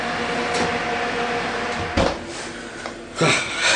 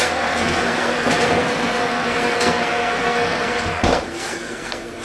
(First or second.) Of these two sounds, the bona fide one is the first